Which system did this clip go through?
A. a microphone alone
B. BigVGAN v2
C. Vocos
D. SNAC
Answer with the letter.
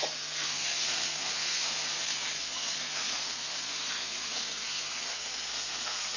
D